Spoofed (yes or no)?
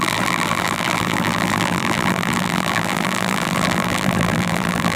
yes